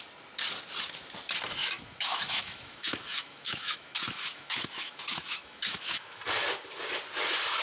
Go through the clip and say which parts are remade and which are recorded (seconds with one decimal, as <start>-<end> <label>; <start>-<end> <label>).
0.0-1.6 recorded; 1.6-6.2 remade; 6.2-7.6 recorded